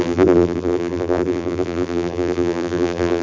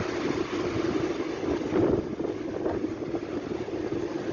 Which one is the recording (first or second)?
second